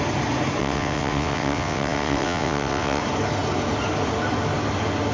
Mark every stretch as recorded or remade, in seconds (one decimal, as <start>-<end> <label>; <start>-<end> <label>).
0.0-0.6 recorded; 0.6-3.0 remade; 3.0-5.1 recorded

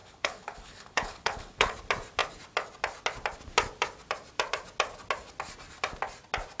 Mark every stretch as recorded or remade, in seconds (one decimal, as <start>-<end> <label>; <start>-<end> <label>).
0.0-1.7 remade; 1.7-6.6 recorded

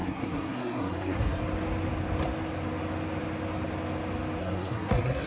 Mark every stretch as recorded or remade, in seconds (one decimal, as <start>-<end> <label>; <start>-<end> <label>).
0.0-1.4 remade; 1.4-4.4 recorded; 4.4-5.3 remade

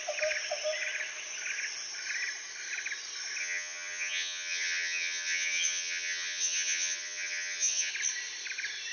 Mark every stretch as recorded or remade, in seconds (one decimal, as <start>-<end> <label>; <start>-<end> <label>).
0.0-3.4 recorded; 3.4-7.9 remade; 7.9-8.9 recorded

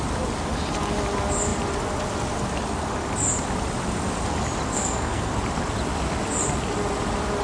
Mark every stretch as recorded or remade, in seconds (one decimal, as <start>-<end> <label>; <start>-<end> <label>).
0.0-4.7 recorded; 4.7-5.3 remade; 5.3-7.4 recorded

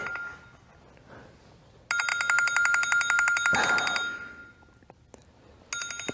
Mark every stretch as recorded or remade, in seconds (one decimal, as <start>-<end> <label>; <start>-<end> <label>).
0.0-6.1 recorded

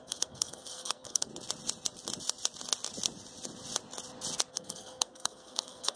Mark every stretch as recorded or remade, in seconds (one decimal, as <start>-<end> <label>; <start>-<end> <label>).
0.0-1.3 remade; 1.3-4.5 recorded; 4.5-6.0 remade